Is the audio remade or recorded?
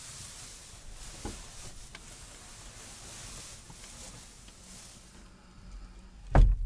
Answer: recorded